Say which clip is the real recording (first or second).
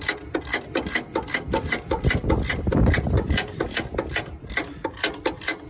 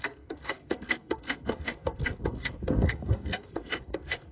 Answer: first